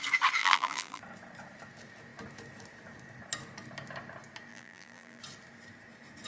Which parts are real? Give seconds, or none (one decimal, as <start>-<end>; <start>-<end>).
0.0-0.4; 1.0-4.5; 5.2-6.3